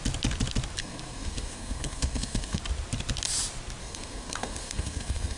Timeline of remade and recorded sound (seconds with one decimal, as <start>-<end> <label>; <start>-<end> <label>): 0.0-0.8 recorded; 0.8-2.6 remade; 2.6-3.8 recorded; 3.8-5.4 remade